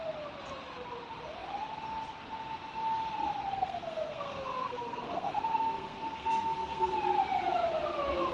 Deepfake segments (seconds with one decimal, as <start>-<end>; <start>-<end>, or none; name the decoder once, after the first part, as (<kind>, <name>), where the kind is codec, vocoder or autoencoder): 3.5-6.9 (codec, SNAC)